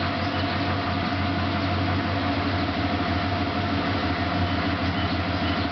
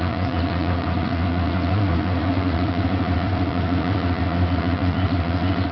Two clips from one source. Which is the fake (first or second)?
second